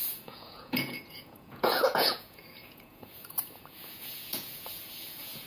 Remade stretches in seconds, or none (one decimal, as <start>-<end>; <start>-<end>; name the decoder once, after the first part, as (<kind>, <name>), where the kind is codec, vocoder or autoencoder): 0.0-5.5 (vocoder, Vocos)